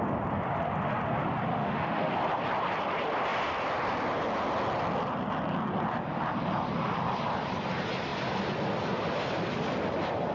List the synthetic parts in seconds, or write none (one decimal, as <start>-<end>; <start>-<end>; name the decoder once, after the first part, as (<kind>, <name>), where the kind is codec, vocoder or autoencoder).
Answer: 1.5-2.1 (autoencoder, DAC-VAE)